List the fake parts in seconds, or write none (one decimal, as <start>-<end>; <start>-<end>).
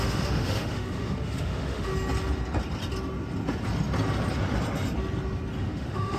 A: 0.0-1.9; 5.6-6.2